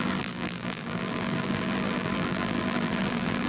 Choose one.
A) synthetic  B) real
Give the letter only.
A